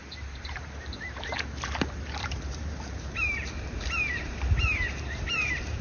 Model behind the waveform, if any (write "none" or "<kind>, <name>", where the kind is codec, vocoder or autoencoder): vocoder, BigVGAN v2